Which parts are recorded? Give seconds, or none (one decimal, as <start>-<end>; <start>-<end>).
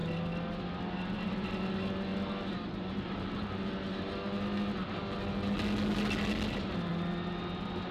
0.0-7.9